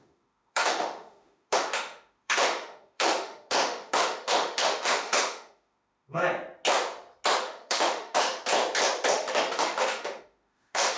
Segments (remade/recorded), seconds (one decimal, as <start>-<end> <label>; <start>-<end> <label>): 0.0-6.2 remade; 6.2-7.4 recorded; 7.4-8.4 remade; 8.4-9.1 recorded; 9.1-11.0 remade